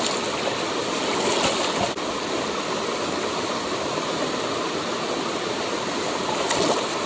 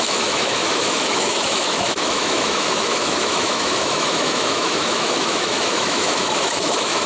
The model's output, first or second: second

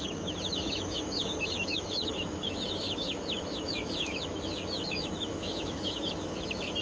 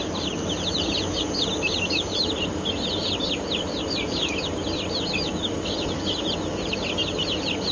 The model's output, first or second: first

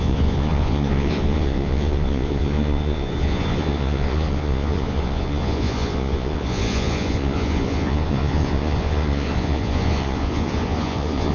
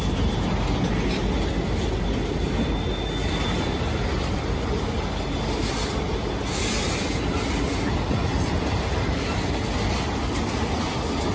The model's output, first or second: first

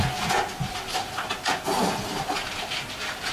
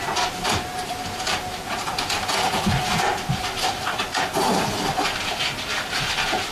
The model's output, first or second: second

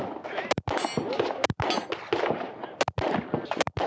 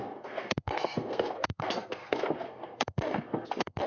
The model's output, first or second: second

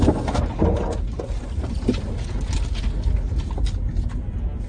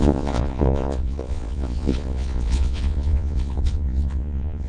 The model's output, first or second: second